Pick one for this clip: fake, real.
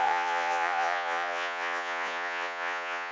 fake